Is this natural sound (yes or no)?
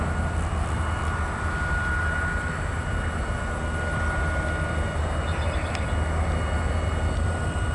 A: yes